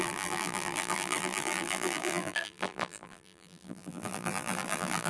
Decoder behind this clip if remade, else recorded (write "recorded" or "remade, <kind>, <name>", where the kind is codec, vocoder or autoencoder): remade, vocoder, BigVGAN v2